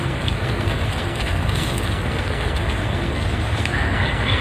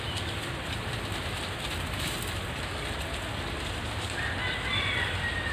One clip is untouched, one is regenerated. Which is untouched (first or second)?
second